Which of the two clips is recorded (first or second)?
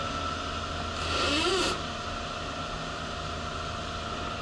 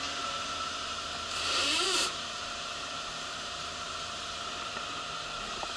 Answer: first